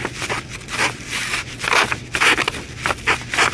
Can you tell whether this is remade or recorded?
remade